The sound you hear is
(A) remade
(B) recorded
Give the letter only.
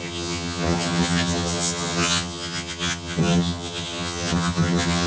A